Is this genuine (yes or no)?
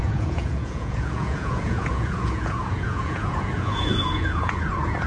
no